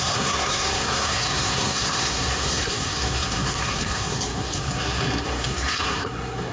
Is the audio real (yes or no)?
no